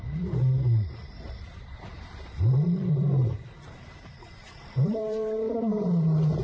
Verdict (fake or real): fake